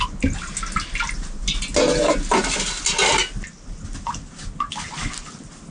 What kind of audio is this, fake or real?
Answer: real